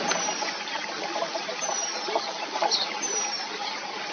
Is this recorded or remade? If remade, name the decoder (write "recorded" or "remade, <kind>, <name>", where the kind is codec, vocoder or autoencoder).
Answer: recorded